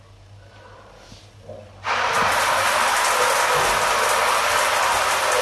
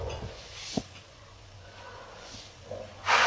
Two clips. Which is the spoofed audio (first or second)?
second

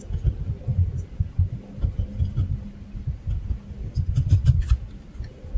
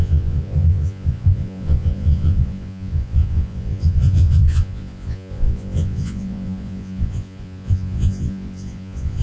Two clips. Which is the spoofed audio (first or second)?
second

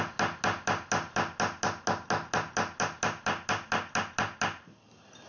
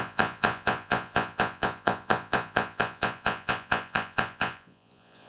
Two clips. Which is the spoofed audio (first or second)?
second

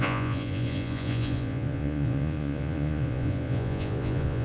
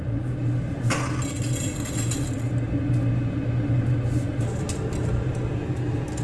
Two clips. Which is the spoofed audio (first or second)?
first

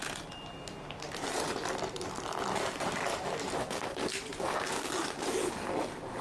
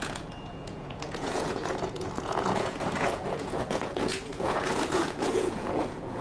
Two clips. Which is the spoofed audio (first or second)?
second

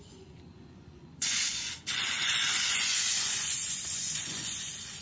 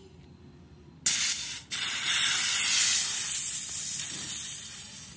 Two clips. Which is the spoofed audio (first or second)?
first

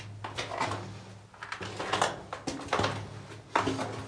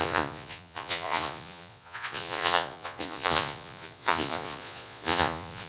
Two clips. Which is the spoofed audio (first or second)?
second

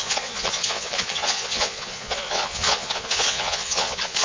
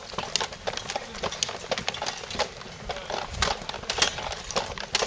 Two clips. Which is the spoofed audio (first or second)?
first